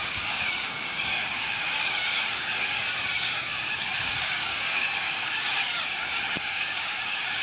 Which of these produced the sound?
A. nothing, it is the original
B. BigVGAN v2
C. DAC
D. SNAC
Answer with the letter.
C